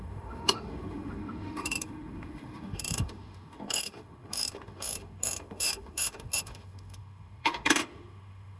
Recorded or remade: remade